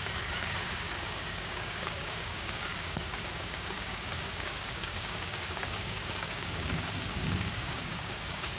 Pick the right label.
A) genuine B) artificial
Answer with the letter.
B